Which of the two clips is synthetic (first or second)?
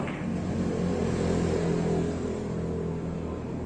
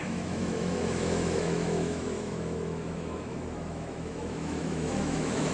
second